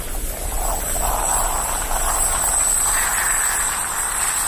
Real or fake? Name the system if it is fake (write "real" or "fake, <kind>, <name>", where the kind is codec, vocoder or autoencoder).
real